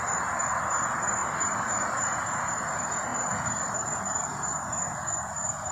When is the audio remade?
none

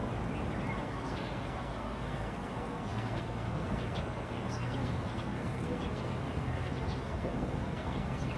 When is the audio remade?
0.8-8.4 (codec, SNAC)

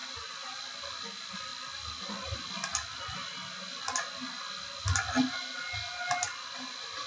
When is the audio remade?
none

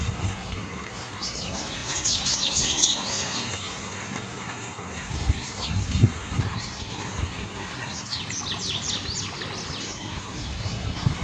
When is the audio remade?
0.0-8.2 (codec, SNAC); 9.8-11.2